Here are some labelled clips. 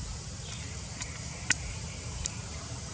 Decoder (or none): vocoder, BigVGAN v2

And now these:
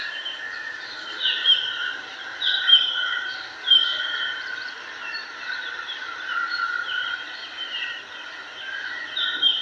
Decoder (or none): vocoder, BigVGAN v2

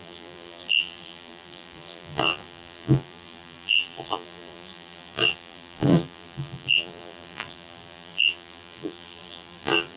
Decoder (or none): vocoder, BigVGAN v2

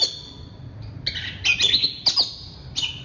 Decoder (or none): none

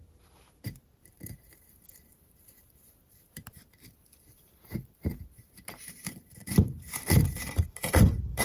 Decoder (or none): vocoder, BigVGAN v2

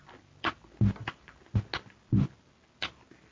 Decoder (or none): none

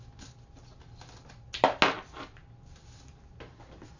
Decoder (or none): none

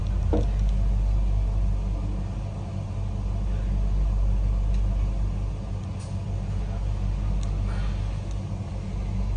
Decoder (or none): none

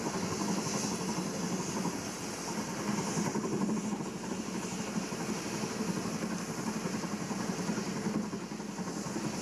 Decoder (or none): none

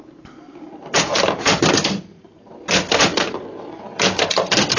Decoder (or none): vocoder, BigVGAN v2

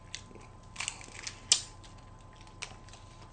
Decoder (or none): none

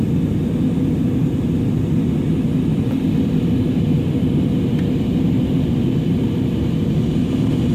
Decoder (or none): none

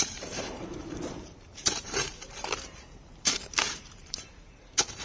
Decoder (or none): vocoder, BigVGAN v2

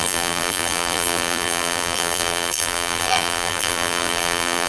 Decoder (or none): vocoder, BigVGAN v2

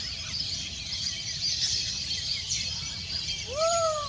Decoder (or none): vocoder, BigVGAN v2